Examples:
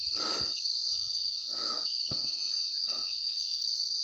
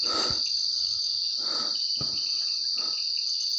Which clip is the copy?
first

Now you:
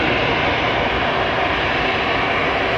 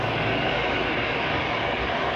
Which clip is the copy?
second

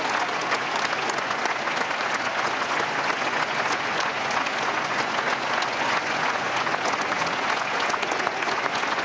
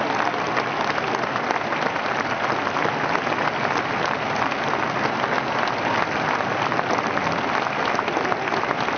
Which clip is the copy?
first